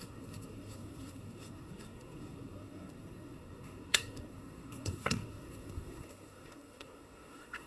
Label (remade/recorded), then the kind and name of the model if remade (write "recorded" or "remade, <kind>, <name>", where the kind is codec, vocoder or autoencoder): remade, codec, SNAC